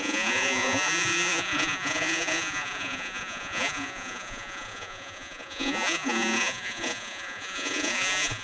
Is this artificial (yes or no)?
yes